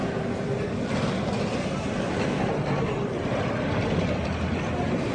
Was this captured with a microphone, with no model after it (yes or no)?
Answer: yes